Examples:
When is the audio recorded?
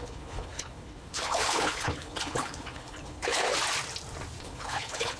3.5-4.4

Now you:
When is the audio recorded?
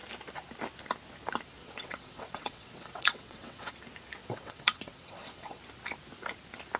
0.0-1.6; 3.7-4.2; 5.6-6.8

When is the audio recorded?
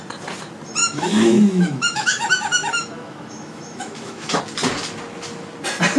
0.0-0.8; 4.4-6.0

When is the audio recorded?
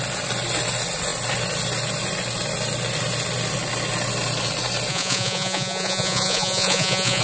0.0-4.9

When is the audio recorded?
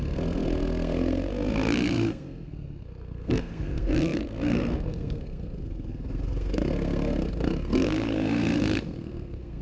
none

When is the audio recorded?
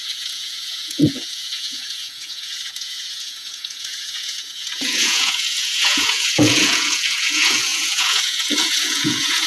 none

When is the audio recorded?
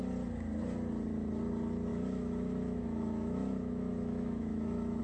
0.0-1.9